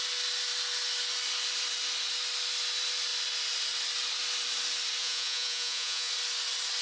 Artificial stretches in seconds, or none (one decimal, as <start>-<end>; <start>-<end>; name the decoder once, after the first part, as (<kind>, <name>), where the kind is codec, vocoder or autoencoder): 5.0-6.1 (vocoder, Vocos)